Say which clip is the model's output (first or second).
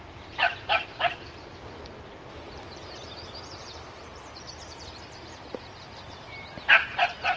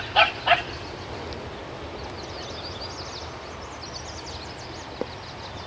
first